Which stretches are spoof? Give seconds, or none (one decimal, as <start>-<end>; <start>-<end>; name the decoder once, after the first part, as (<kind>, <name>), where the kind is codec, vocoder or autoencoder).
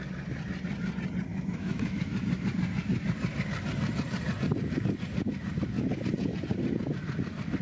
1.3-2.0 (autoencoder, DAC-VAE)